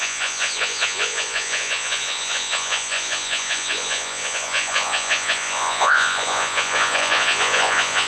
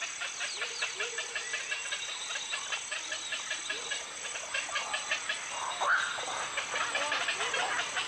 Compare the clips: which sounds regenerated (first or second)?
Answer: first